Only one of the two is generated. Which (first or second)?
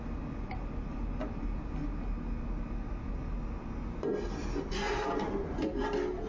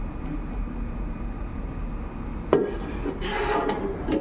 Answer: second